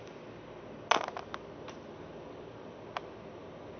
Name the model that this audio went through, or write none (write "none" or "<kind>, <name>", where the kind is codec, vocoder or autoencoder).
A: none